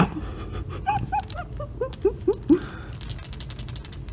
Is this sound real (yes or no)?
yes